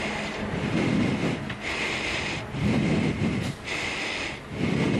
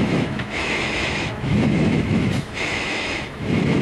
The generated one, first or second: second